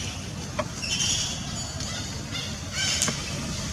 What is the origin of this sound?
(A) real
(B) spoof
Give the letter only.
A